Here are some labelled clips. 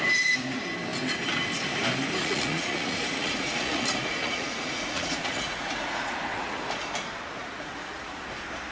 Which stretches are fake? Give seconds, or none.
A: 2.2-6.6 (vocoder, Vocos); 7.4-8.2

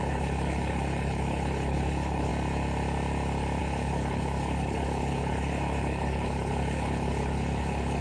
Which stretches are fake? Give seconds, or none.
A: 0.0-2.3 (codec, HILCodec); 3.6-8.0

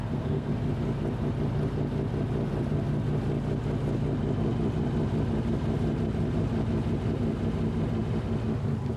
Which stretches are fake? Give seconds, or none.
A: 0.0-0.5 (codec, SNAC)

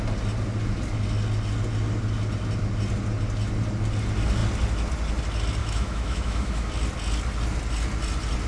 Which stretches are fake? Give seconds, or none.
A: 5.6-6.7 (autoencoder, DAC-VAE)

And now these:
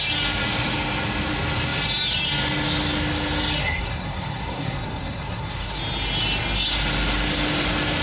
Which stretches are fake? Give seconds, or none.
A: 3.6-5.8 (codec, SNAC)

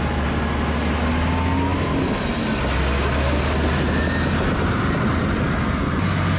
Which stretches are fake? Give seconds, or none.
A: none